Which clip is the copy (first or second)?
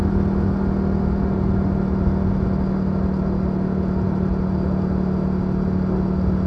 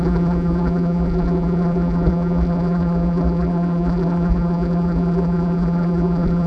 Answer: second